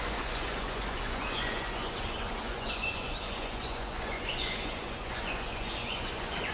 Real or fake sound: fake